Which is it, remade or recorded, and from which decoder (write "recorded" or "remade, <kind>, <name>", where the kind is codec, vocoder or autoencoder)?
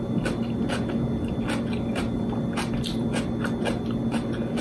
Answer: recorded